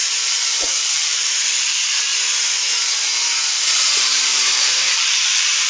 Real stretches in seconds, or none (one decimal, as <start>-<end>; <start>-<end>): 2.1-3.5